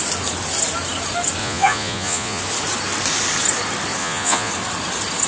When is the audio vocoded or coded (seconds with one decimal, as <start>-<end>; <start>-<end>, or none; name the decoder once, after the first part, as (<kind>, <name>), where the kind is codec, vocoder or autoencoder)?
1.4-2.4 (vocoder, Vocos); 4.0-4.5